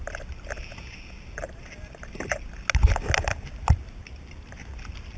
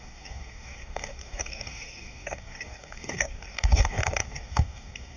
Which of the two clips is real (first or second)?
first